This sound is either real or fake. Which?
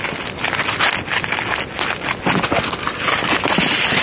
real